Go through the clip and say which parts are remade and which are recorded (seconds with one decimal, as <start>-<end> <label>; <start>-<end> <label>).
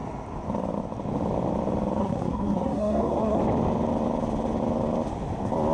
0.0-2.0 recorded; 2.0-3.4 remade; 3.4-5.7 recorded